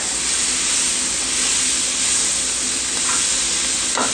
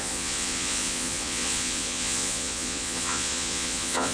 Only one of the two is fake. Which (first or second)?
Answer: second